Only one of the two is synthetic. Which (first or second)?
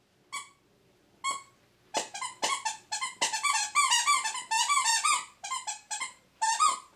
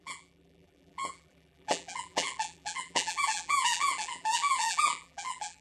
second